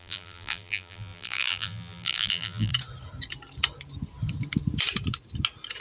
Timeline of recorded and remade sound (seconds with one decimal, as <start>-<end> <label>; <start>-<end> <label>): 0.0-2.7 remade; 2.7-5.8 recorded